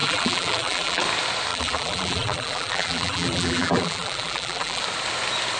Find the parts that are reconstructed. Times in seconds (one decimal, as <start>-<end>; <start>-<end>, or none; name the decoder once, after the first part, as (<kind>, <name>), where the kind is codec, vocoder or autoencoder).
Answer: 0.0-1.0 (vocoder, BigVGAN v2); 1.5-4.8